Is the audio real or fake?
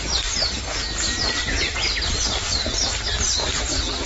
real